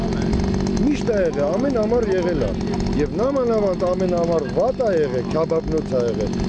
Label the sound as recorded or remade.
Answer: recorded